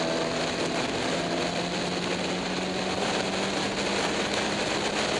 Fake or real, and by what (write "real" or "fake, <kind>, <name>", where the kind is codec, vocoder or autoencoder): real